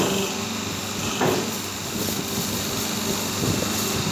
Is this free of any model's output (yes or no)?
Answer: yes